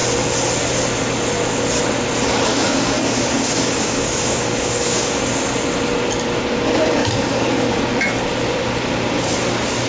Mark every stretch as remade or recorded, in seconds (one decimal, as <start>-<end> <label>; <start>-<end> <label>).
0.0-2.5 recorded; 2.5-5.2 remade; 5.2-7.0 recorded; 7.0-7.8 remade; 7.8-9.9 recorded